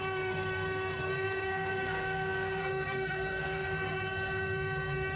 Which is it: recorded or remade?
remade